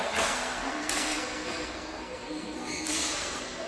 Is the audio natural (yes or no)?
no